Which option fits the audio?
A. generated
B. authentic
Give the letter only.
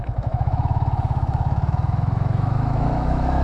A